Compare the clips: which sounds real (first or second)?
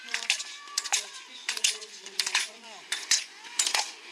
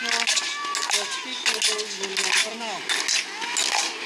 second